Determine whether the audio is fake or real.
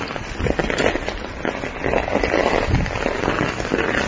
real